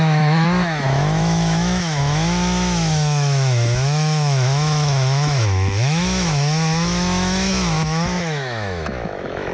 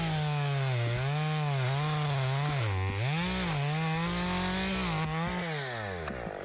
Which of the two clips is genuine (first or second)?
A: second